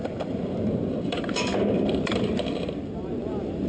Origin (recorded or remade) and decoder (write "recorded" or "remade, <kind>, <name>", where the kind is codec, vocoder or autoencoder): remade, vocoder, BigVGAN v2